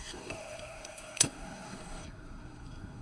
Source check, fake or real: fake